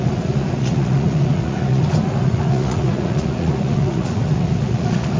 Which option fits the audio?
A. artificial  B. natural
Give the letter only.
A